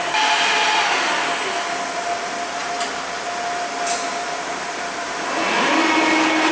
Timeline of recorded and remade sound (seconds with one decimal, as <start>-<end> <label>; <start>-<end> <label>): 0.0-6.5 recorded